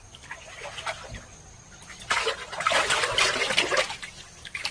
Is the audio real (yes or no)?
yes